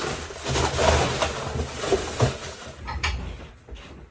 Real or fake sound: real